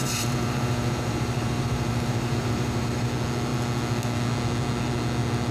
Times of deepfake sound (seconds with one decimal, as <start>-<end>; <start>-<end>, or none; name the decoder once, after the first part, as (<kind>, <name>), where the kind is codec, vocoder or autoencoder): 0.0-3.1 (vocoder, BigVGAN v2)